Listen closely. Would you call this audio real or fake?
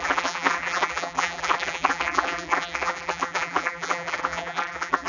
fake